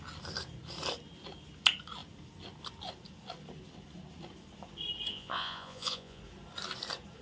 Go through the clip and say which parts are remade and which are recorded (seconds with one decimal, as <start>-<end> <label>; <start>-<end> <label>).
0.0-5.1 recorded; 5.1-6.2 remade; 6.2-7.2 recorded